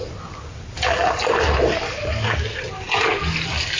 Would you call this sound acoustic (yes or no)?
yes